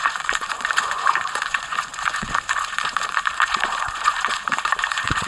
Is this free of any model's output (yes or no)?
no